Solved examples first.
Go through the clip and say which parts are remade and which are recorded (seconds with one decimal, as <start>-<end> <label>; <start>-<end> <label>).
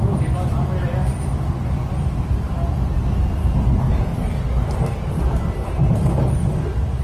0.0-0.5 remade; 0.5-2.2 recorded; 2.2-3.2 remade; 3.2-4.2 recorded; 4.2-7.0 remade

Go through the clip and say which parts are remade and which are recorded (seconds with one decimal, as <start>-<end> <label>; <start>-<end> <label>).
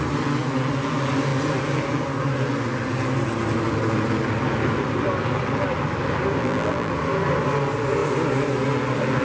0.0-6.4 recorded; 6.4-6.9 remade; 6.9-9.2 recorded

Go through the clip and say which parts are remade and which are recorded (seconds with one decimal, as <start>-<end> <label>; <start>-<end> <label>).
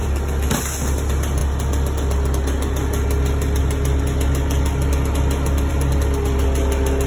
0.0-7.1 recorded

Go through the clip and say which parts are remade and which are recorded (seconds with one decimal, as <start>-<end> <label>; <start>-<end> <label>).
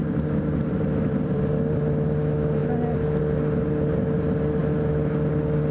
0.0-1.4 remade; 1.4-5.7 recorded